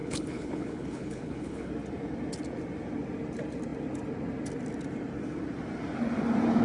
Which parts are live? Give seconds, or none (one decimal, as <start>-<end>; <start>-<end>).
1.7-6.6